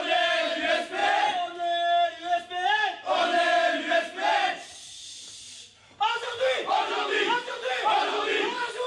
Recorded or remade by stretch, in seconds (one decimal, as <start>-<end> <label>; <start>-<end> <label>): 0.0-8.9 recorded